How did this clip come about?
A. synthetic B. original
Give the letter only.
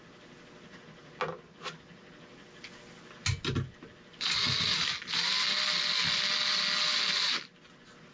B